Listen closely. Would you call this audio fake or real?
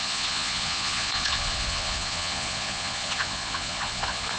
fake